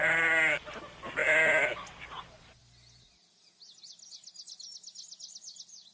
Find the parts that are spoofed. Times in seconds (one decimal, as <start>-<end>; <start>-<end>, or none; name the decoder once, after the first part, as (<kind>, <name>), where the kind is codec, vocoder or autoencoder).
none